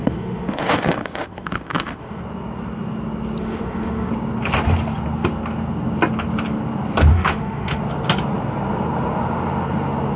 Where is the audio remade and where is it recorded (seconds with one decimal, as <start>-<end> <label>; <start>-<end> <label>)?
0.0-2.2 remade; 2.2-3.4 recorded; 3.4-4.1 remade; 4.1-7.1 recorded; 7.1-7.8 remade; 7.8-10.2 recorded